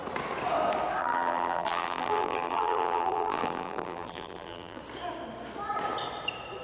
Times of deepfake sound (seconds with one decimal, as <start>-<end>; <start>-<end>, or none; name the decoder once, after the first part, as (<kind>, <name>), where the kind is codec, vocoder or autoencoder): 1.0-4.8 (vocoder, BigVGAN v2)